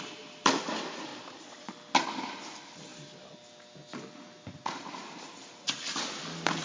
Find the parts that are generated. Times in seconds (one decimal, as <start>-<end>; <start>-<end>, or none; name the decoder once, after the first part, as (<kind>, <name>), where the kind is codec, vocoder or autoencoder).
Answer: 1.1-1.7 (vocoder, Vocos)